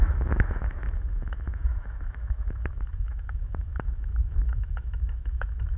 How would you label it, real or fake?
fake